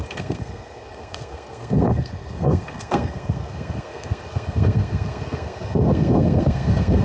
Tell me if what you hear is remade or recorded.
remade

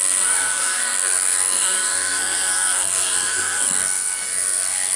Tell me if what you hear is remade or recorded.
remade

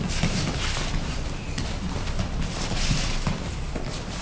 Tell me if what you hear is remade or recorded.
recorded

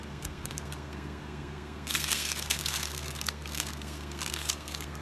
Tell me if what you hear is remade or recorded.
remade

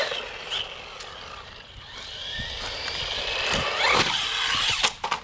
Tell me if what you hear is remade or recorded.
recorded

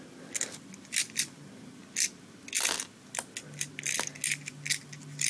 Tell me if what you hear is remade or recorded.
recorded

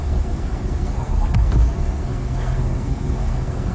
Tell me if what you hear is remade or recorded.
remade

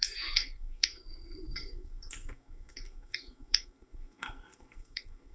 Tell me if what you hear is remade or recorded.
remade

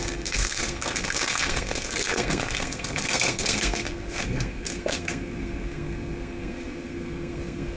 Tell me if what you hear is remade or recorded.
remade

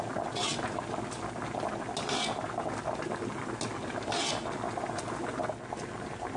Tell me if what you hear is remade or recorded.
recorded